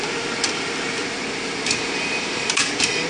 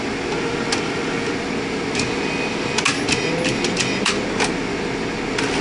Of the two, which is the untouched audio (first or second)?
second